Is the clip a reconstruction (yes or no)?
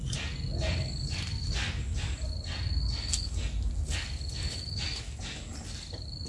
no